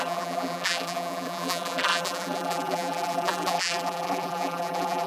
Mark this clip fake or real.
fake